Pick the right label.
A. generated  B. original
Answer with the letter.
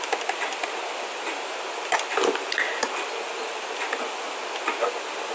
B